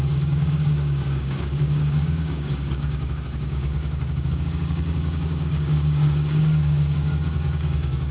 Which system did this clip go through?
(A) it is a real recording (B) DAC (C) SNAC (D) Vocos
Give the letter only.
B